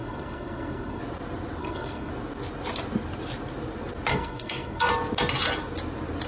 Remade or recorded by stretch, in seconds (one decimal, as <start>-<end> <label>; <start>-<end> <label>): 0.0-1.0 remade; 1.0-1.6 recorded; 1.6-2.1 remade; 2.1-4.1 recorded; 4.1-4.9 remade; 4.9-6.3 recorded